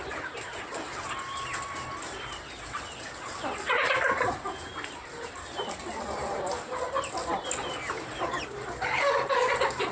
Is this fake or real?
real